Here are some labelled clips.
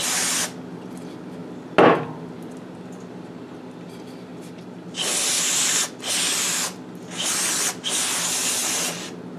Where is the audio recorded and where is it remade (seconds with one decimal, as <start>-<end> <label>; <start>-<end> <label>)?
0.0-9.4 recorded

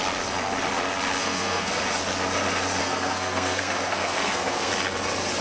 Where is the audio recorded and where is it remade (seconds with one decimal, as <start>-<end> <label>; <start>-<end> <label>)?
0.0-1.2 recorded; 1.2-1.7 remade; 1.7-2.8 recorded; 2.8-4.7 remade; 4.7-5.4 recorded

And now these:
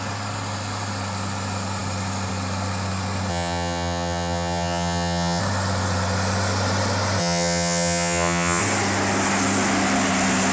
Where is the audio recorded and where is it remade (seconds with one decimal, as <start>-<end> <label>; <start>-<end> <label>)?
0.0-3.3 recorded; 3.3-5.4 remade; 5.4-7.2 recorded; 7.2-8.6 remade; 8.6-10.5 recorded